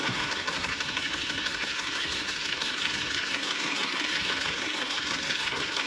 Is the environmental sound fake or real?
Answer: fake